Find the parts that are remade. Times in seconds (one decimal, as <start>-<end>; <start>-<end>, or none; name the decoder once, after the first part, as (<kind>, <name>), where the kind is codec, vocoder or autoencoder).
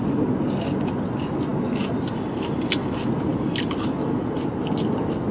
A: none